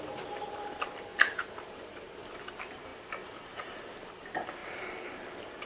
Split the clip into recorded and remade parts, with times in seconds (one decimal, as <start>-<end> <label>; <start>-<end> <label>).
0.0-1.1 recorded; 1.1-1.7 remade; 1.7-5.7 recorded